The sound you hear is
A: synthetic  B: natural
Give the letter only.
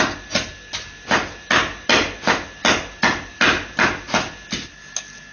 B